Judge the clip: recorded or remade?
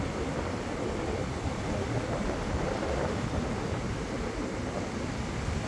recorded